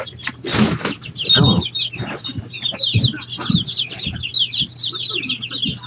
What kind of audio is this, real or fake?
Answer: real